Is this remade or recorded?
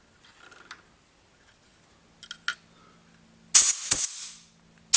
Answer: recorded